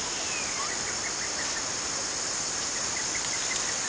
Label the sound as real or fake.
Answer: real